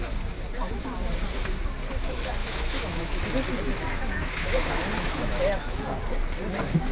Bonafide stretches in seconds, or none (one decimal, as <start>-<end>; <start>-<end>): 0.0-2.4; 3.2-3.9; 5.8-6.9